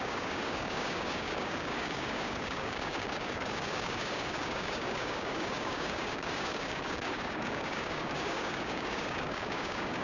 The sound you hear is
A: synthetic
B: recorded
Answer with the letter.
A